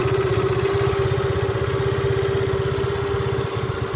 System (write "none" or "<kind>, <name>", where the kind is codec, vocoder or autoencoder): none